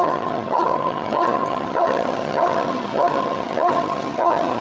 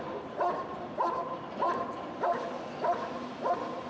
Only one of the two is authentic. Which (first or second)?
second